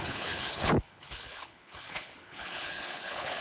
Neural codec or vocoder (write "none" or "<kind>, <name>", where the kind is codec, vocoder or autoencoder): codec, HILCodec